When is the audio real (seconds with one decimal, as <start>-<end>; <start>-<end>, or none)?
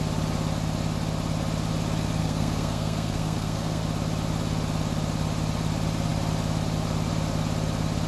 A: 0.0-2.2; 3.8-8.1